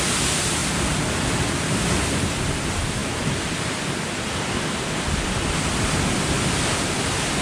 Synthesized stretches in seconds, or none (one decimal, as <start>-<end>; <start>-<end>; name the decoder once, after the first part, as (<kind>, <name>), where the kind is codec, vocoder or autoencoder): 0.6-1.5 (vocoder, BigVGAN v2)